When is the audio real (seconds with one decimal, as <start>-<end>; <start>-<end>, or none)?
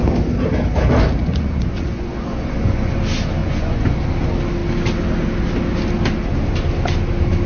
0.0-1.2; 3.0-3.4; 4.0-7.5